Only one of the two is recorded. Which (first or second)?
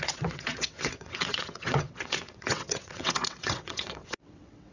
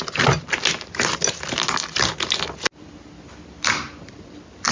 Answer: second